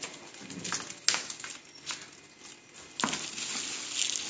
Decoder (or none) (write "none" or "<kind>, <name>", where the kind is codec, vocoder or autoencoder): none